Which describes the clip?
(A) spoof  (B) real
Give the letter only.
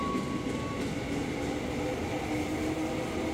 B